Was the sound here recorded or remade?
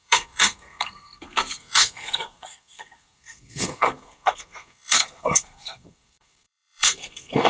remade